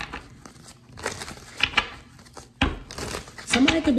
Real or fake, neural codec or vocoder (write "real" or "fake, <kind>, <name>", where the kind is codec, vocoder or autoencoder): real